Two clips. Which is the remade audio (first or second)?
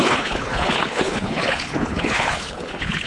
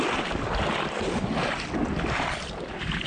first